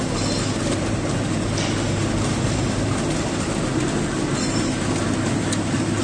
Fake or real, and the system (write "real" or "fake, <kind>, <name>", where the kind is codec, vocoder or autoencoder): real